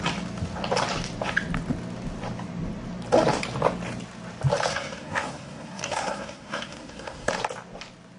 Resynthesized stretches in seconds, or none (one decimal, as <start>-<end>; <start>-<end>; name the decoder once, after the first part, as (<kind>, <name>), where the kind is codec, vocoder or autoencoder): 4.7-7.3 (codec, SNAC)